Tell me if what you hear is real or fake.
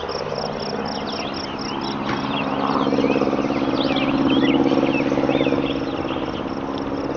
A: real